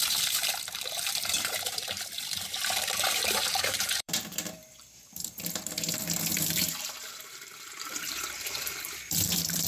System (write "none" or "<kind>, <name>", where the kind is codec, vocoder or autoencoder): vocoder, BigVGAN v2